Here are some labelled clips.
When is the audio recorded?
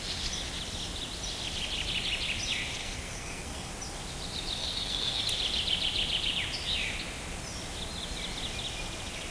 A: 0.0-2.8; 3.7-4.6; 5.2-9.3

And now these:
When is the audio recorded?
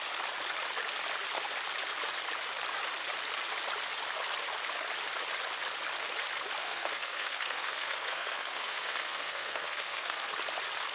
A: 0.0-6.6; 10.3-10.9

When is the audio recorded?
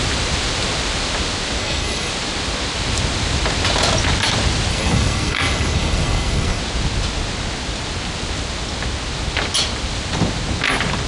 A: 0.0-1.6; 2.1-4.7; 6.6-11.1